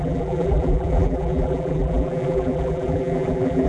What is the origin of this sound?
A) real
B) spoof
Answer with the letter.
B